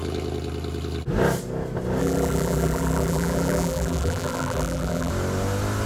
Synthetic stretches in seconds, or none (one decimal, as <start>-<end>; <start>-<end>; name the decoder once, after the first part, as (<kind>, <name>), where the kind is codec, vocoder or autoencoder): 2.0-5.1 (vocoder, BigVGAN v2)